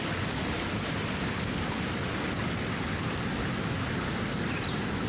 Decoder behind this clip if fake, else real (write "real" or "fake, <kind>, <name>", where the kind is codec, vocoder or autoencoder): real